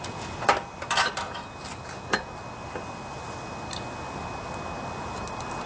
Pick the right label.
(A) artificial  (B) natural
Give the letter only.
B